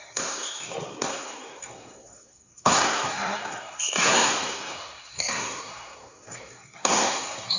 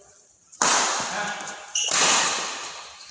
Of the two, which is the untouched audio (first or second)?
second